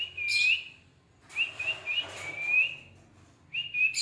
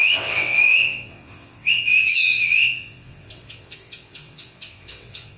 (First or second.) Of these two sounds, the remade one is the second